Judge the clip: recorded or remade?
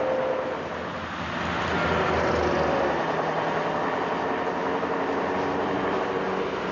recorded